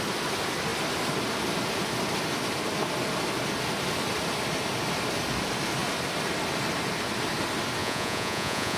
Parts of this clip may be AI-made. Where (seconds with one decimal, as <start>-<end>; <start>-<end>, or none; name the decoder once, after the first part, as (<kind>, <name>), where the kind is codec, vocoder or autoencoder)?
7.8-8.8 (vocoder, Vocos)